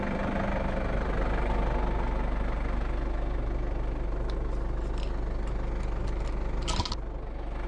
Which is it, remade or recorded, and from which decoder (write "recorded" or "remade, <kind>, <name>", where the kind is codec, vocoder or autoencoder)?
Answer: recorded